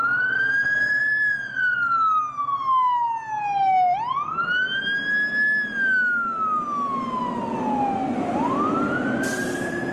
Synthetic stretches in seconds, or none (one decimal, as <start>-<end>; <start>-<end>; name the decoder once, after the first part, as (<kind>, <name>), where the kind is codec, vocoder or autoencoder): 0.6-1.1 (vocoder, BigVGAN v2)